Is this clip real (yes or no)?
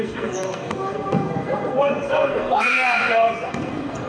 no